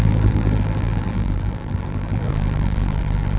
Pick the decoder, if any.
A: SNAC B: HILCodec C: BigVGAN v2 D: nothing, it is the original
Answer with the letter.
C